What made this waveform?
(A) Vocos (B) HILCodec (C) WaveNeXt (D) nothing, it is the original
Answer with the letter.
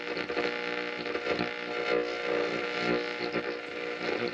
D